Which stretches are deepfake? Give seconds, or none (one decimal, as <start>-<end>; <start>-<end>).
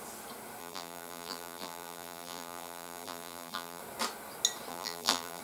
0.6-3.8; 4.7-5.4